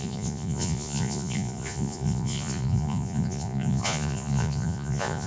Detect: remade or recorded remade